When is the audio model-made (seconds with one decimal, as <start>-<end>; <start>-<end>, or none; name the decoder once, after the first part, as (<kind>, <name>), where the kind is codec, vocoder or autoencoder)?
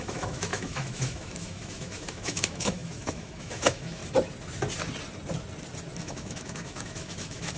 0.0-4.0 (autoencoder, DAC-VAE); 6.0-7.6